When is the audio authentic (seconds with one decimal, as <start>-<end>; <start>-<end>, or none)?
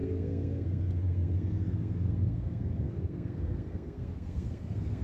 none